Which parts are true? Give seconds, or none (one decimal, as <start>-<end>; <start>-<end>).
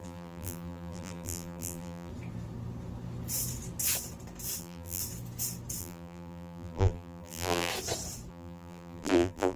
2.1-4.6; 5.0-5.8; 7.7-8.3